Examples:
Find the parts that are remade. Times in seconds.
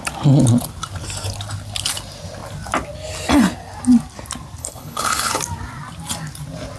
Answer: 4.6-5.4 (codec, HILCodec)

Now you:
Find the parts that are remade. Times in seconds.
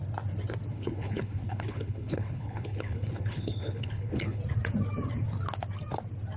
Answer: 0.7-4.4 (codec, HILCodec)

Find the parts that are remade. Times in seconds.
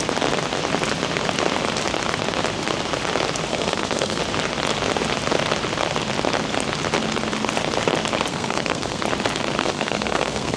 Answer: 3.5-4.2 (codec, SNAC); 8.3-9.0; 9.6-10.6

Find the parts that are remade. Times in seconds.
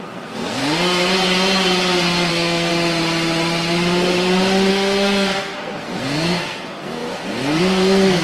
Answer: 0.0-0.6 (codec, SNAC); 2.3-2.7; 4.7-8.2